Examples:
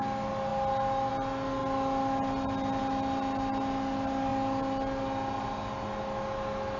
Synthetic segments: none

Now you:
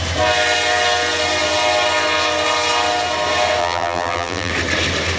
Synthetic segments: 3.6-4.5 (vocoder, BigVGAN v2)

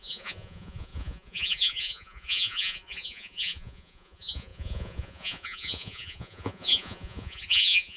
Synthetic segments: 0.0-8.0 (vocoder, Vocos)

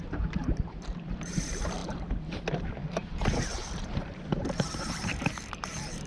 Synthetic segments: 0.0-6.1 (vocoder, BigVGAN v2)

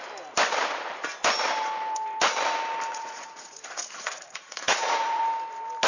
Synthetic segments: 2.9-5.2 (vocoder, Vocos)

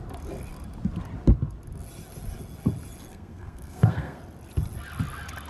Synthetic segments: 3.1-4.2 (codec, SNAC)

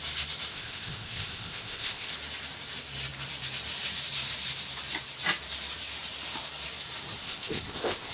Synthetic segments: 0.5-2.1 (codec, ZipCodec); 7.2-8.1

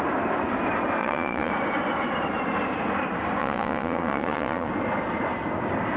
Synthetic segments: 1.0-1.5 (vocoder, Vocos); 3.4-4.7